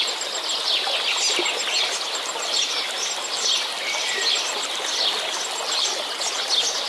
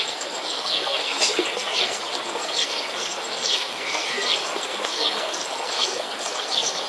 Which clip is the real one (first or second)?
first